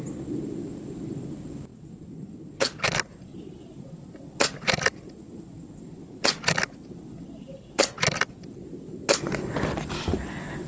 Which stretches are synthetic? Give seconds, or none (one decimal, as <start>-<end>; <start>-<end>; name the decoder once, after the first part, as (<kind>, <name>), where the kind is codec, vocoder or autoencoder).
none